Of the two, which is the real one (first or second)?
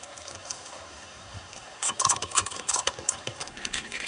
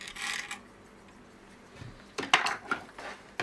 second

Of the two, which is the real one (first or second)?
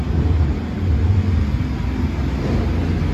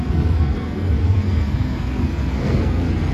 first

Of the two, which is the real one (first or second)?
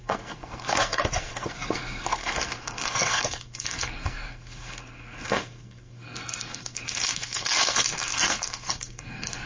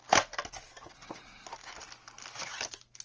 second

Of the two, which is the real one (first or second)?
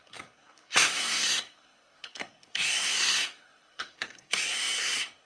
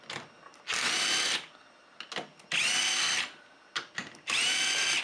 second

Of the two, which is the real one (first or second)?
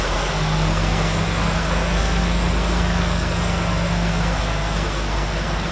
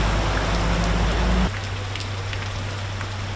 second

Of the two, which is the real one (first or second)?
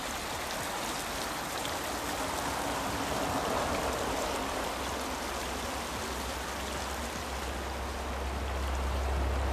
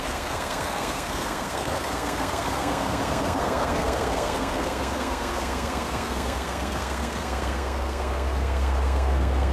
first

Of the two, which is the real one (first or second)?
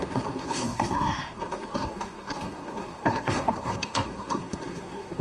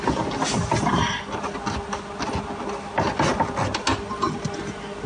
second